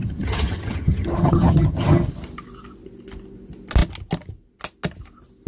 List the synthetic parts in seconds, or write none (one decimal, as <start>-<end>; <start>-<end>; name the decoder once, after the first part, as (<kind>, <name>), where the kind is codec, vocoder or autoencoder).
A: 0.0-2.1 (vocoder, HiFi-GAN)